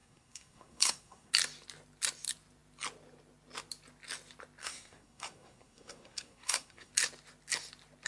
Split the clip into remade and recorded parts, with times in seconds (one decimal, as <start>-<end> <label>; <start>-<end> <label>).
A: 0.0-1.3 remade; 1.3-4.6 recorded; 4.6-6.9 remade; 6.9-8.1 recorded